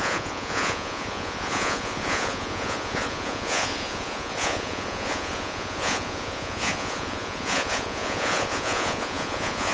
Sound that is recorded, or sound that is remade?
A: remade